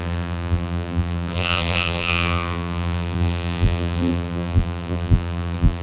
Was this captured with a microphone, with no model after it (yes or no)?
no